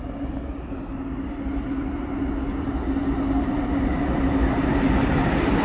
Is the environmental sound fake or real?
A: real